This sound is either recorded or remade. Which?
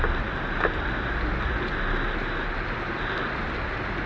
recorded